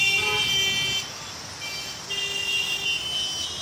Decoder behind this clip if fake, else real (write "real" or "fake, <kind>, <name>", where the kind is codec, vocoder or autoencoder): real